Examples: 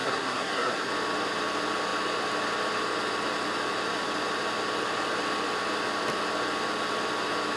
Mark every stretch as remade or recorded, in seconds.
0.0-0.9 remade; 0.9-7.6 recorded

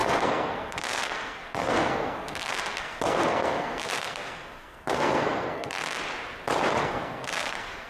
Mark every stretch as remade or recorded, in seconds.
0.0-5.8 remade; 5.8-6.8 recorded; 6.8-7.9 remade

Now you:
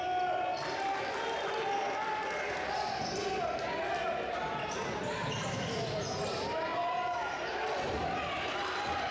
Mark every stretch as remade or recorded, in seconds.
0.0-9.1 recorded

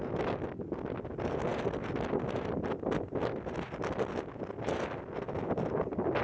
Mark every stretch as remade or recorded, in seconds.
0.0-6.2 recorded